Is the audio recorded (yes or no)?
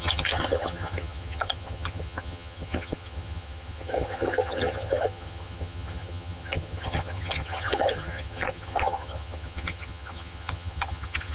no